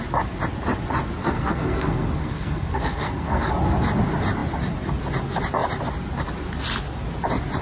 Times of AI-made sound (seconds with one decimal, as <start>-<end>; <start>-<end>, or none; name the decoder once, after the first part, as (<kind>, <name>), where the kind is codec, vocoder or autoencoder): 1.2-3.5 (codec, SNAC)